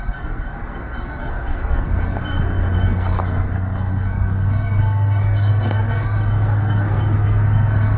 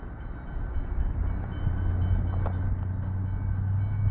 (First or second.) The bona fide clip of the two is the second